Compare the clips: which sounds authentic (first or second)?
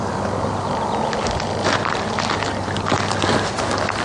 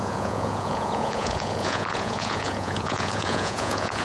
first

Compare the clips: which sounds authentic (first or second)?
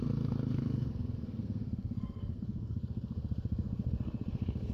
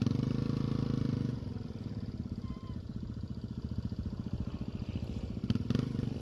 second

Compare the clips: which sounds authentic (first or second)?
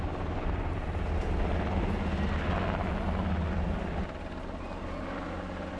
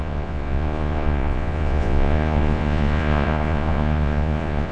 first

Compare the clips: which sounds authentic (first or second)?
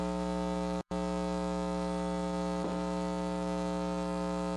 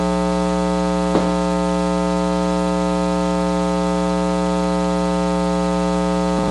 second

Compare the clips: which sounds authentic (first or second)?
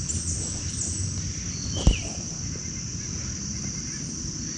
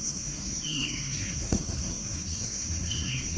first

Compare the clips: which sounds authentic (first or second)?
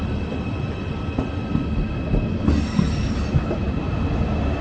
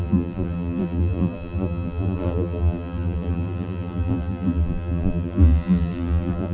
first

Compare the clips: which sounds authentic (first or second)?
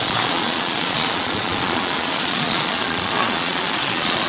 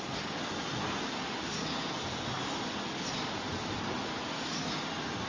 second